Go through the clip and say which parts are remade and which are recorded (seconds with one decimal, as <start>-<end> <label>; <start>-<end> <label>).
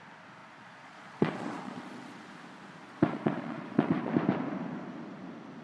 0.0-0.4 recorded; 0.4-2.3 remade; 2.3-2.8 recorded; 2.8-4.1 remade; 4.1-5.6 recorded